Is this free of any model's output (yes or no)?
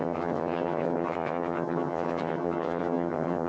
no